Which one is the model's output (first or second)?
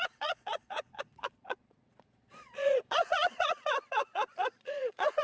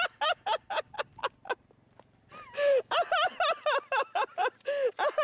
first